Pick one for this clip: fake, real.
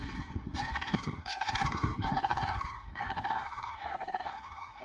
fake